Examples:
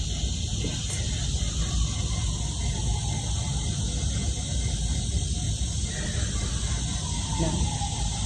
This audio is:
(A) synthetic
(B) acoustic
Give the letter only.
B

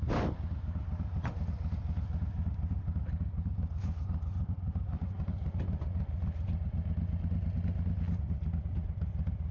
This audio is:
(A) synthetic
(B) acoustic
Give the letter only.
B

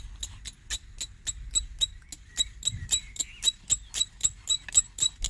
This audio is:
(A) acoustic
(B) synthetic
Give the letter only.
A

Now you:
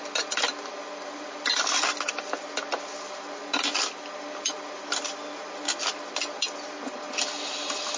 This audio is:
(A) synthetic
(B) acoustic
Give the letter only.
B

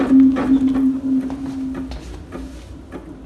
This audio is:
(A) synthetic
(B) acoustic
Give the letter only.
B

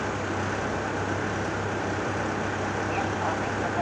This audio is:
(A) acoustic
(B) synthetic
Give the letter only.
A